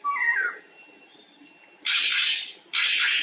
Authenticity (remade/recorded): recorded